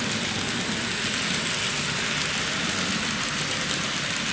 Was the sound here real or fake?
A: real